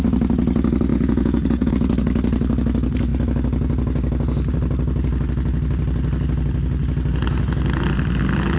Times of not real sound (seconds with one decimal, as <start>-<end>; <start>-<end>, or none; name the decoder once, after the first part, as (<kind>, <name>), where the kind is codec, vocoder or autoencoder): 0.9-1.7 (vocoder, Vocos)